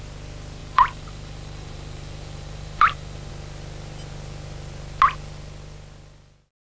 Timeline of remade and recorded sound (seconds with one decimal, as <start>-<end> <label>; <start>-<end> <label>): 0.0-0.6 recorded; 0.6-3.3 remade; 3.3-6.6 recorded

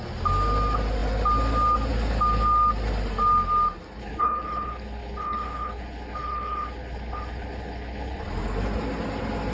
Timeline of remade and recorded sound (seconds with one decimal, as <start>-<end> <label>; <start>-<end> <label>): 0.0-4.0 recorded; 4.0-8.2 remade; 8.2-9.5 recorded

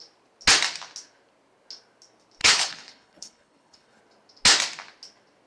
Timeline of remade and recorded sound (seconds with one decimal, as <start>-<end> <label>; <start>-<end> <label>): 0.0-2.4 recorded; 2.4-4.0 remade; 4.0-5.5 recorded

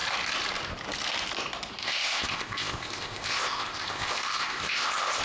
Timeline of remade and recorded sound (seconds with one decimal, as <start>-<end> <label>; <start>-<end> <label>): 0.0-1.8 recorded; 1.8-5.2 remade

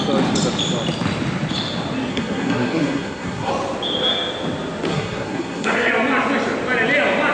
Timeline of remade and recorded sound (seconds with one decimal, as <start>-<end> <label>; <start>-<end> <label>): 0.0-2.1 recorded; 2.1-3.5 remade; 3.5-4.9 recorded; 4.9-5.9 remade; 5.9-7.3 recorded

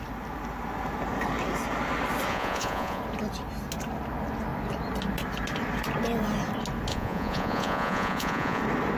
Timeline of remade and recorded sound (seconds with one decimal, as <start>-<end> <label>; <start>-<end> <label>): 0.0-2.3 recorded; 2.3-3.0 remade; 3.0-6.9 recorded; 6.9-8.6 remade; 8.6-9.0 recorded

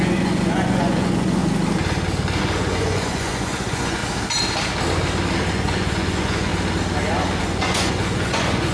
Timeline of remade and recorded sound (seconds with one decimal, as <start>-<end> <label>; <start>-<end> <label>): 0.0-1.4 remade; 1.4-2.4 recorded; 2.4-4.0 remade; 4.0-5.5 recorded; 5.5-6.5 remade; 6.5-7.4 recorded; 7.4-8.7 remade

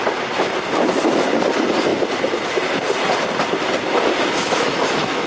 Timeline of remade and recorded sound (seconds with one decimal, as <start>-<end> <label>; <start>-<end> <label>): 0.0-4.4 recorded; 4.4-5.3 remade